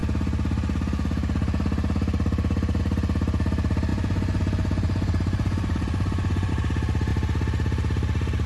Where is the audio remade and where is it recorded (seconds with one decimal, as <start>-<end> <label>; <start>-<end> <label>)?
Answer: 0.0-3.9 recorded; 3.9-6.5 remade; 6.5-8.5 recorded